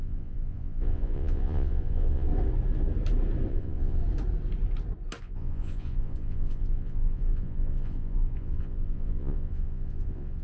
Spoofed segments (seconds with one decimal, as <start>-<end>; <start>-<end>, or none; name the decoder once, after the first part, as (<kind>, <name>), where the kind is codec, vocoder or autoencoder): 0.0-2.3 (vocoder, Vocos); 3.5-4.0; 5.2-10.4